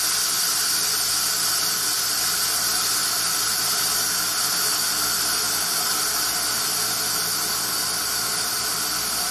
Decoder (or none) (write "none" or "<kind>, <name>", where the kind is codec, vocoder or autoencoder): none